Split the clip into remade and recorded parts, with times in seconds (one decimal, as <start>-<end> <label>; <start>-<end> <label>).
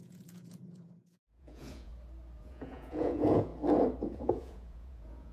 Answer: 0.0-1.9 remade; 1.9-2.4 recorded; 2.4-3.5 remade; 3.5-4.0 recorded; 4.0-5.3 remade